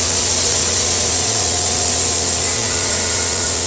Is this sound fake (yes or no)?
yes